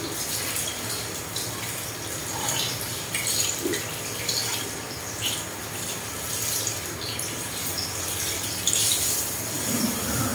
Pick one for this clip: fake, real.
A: fake